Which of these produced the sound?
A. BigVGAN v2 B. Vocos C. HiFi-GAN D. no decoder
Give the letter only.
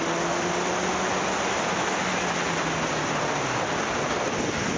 D